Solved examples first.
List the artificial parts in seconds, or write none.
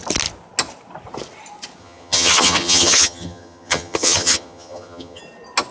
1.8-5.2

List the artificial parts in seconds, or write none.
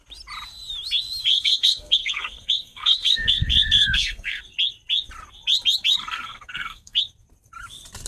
1.3-4.4; 6.0-7.0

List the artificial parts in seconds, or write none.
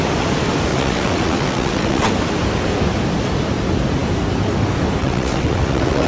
0.7-2.1; 5.0-6.1